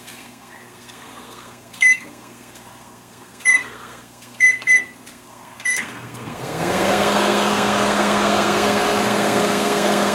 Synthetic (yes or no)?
yes